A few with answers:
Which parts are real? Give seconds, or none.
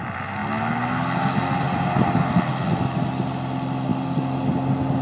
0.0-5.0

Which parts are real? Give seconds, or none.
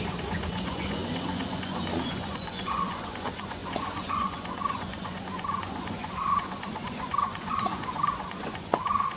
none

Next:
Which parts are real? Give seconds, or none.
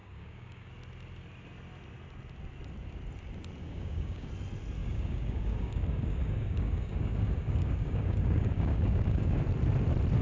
0.7-3.6; 4.3-4.8; 9.4-10.2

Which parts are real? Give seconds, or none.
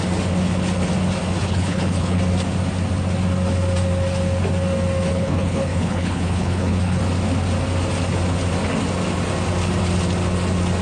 0.0-1.4; 2.2-5.1; 7.0-10.8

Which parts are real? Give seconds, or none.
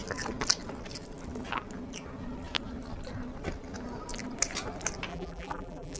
0.0-5.1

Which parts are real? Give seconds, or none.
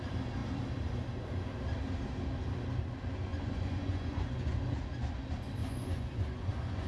0.0-3.3; 4.6-5.6